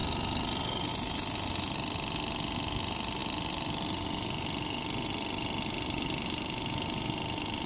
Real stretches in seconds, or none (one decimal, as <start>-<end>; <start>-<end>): 0.9-3.2

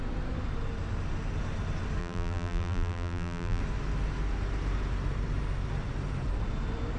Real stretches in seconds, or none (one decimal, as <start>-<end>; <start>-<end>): 0.0-2.0; 3.6-7.0

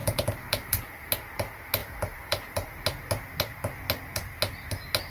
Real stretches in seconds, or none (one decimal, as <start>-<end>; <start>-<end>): 1.1-1.8; 2.8-5.1

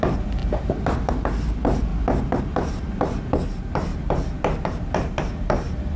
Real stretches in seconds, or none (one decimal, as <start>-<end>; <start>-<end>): 1.9-2.4

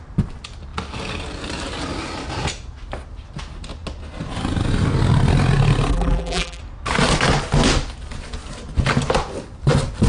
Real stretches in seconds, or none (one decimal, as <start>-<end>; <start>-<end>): 0.0-5.9; 6.6-10.1

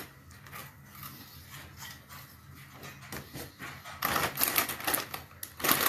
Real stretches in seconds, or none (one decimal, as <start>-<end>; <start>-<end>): 0.0-5.9